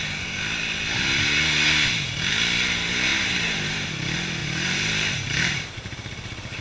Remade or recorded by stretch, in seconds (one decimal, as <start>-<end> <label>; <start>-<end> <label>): 0.0-3.1 recorded; 3.1-3.9 remade; 3.9-4.4 recorded; 4.4-6.6 remade